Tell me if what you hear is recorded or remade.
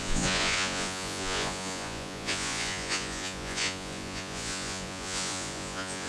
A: remade